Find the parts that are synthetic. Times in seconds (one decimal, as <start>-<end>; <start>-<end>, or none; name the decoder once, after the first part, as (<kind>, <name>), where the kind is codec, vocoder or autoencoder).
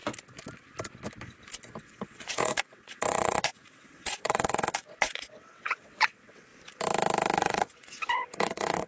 1.8-6.5 (vocoder, WaveNeXt); 7.4-8.9